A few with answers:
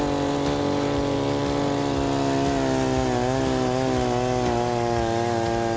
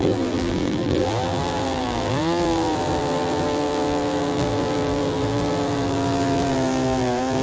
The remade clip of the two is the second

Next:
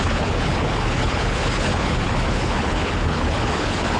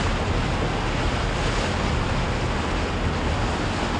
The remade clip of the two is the first